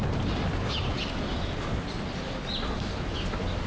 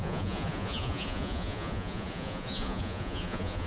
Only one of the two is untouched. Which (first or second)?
first